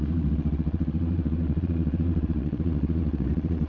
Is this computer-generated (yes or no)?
yes